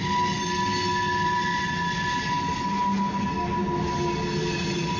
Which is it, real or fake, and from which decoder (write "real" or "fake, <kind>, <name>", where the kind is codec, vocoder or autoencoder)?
real